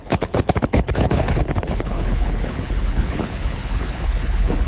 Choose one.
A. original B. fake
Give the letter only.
B